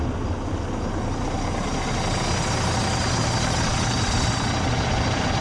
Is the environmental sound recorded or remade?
recorded